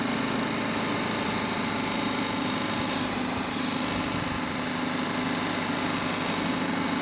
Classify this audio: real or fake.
real